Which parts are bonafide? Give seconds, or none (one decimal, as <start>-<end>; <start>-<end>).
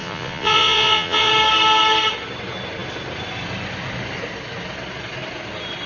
1.3-5.9